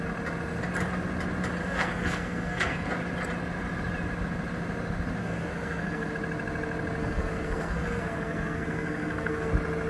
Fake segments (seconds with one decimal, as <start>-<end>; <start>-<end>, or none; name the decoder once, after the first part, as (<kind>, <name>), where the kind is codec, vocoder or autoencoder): 1.6-2.9 (codec, SNAC); 5.2-6.1; 7.0-9.5